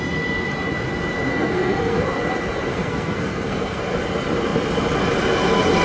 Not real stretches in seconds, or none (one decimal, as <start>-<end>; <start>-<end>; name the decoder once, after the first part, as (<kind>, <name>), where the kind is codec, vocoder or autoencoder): 1.3-2.0 (codec, SNAC); 2.7-3.8